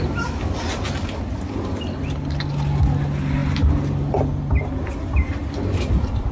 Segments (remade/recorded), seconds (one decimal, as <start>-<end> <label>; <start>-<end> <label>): 0.0-3.4 recorded; 3.4-4.6 remade; 4.6-5.4 recorded; 5.4-6.3 remade